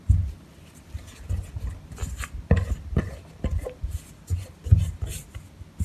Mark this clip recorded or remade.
recorded